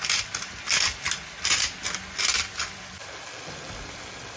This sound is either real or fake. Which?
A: real